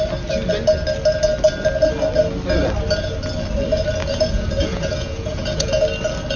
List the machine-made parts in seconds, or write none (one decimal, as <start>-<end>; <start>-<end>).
4.0-5.7